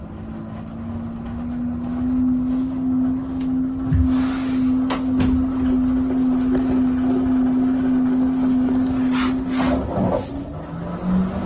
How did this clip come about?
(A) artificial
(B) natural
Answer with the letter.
B